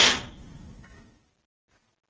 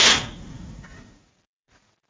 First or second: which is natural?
first